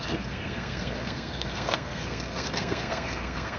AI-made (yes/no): yes